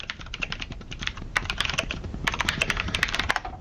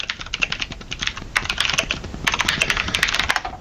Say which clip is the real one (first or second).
second